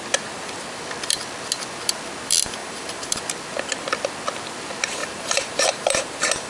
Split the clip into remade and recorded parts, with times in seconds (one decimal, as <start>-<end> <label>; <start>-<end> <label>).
0.0-2.6 recorded; 2.6-3.2 remade; 3.2-5.0 recorded; 5.0-6.5 remade